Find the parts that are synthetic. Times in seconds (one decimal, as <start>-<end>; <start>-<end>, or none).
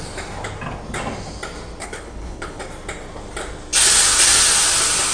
1.8-2.6